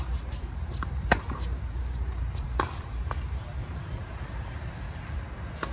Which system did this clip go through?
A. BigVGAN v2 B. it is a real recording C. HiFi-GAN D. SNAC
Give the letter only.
A